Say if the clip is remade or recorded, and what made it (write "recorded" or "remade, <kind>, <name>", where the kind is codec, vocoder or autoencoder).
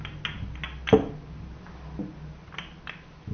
recorded